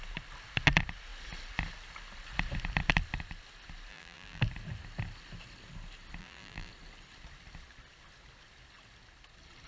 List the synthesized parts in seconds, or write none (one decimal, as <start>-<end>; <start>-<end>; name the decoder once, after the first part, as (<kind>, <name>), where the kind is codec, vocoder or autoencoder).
3.9-4.4 (vocoder, BigVGAN v2); 6.2-6.7